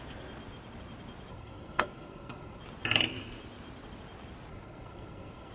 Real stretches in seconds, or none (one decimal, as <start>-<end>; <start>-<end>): 0.0-1.3; 2.6-4.5